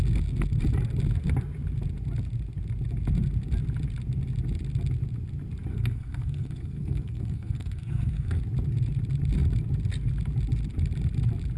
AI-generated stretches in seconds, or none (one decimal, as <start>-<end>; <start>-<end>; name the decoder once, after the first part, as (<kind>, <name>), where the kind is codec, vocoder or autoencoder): 5.7-8.4 (codec, SNAC)